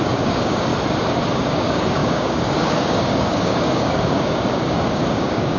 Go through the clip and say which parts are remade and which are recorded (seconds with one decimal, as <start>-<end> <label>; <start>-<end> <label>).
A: 0.0-0.7 remade; 0.7-1.3 recorded; 1.3-5.6 remade